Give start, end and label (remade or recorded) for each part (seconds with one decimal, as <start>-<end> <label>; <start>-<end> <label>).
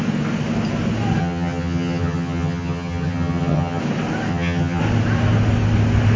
0.0-1.2 recorded; 1.2-3.8 remade; 3.8-4.3 recorded; 4.3-4.8 remade; 4.8-6.2 recorded